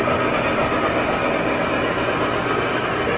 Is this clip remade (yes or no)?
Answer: no